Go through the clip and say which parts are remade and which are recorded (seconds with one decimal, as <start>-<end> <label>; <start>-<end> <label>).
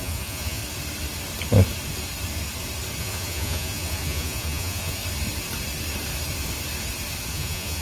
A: 0.0-0.6 remade; 0.6-3.0 recorded; 3.0-5.0 remade; 5.0-7.3 recorded; 7.3-7.8 remade